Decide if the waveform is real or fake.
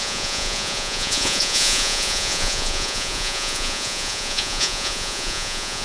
fake